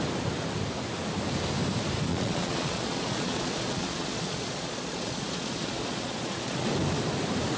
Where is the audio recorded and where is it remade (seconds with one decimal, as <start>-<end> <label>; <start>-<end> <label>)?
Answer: 0.0-2.1 recorded; 2.1-6.7 remade; 6.7-7.6 recorded